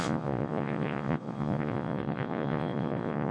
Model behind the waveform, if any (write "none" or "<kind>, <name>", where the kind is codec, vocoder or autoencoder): vocoder, Vocos